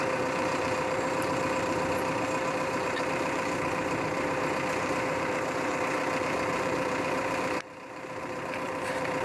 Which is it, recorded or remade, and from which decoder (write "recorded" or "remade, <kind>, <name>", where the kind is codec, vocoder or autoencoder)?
remade, vocoder, BigVGAN v2